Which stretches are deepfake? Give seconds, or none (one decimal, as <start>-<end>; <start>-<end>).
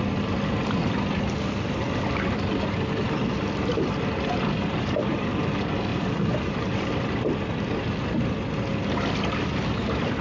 5.9-6.9